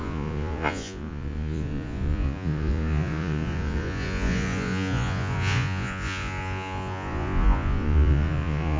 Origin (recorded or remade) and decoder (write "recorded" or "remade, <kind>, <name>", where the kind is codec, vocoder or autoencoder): remade, vocoder, Vocos